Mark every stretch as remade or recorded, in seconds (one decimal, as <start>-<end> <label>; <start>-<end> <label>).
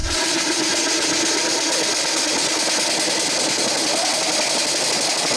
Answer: 0.0-0.6 remade; 0.6-5.4 recorded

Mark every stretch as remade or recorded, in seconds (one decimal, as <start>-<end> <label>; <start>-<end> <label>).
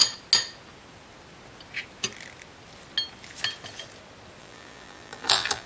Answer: 0.0-4.4 recorded; 4.4-5.7 remade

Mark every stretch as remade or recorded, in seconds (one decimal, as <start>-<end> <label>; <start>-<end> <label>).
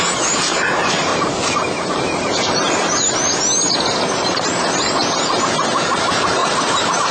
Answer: 0.0-1.1 remade; 1.1-5.4 recorded; 5.4-6.4 remade; 6.4-7.1 recorded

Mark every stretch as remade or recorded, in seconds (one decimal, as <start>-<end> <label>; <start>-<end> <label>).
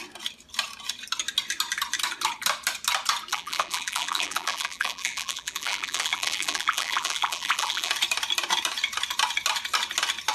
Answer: 0.0-3.3 recorded; 3.3-7.9 remade; 7.9-10.3 recorded